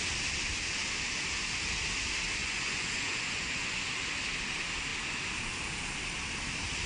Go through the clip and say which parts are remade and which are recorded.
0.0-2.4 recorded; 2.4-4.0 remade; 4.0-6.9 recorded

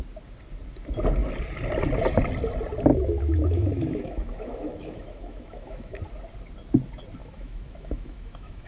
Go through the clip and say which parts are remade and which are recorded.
0.0-2.9 recorded; 2.9-6.0 remade; 6.0-7.2 recorded; 7.2-8.7 remade